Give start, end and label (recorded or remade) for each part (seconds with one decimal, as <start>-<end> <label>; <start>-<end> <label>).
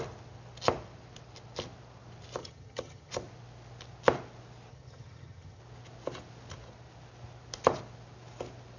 0.0-2.4 recorded; 2.4-3.1 remade; 3.1-4.7 recorded; 4.7-5.6 remade; 5.6-8.8 recorded